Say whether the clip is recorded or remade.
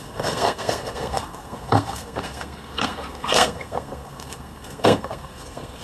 remade